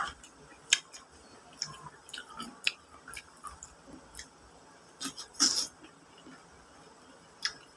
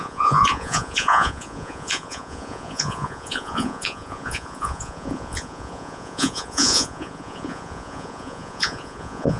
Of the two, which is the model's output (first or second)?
second